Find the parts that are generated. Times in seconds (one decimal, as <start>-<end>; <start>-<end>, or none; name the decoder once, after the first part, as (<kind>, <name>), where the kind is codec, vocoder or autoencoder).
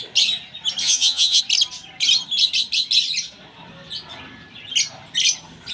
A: 0.8-1.4 (vocoder, HiFi-GAN)